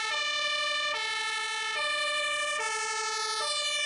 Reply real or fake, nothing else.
real